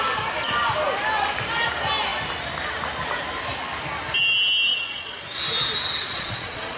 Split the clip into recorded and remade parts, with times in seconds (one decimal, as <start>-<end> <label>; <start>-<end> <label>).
0.0-4.7 recorded; 4.7-5.4 remade; 5.4-6.0 recorded; 6.0-6.8 remade